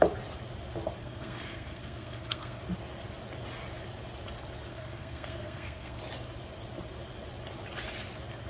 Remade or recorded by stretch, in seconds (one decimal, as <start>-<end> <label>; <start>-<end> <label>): 0.0-1.0 recorded; 1.0-2.6 remade; 2.6-4.7 recorded; 4.7-6.0 remade; 6.0-8.5 recorded